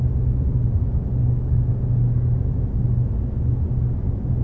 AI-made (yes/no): no